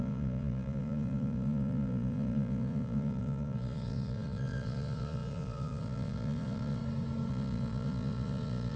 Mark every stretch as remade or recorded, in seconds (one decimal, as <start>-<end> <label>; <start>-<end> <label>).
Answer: 0.0-6.8 remade; 6.8-7.3 recorded; 7.3-8.8 remade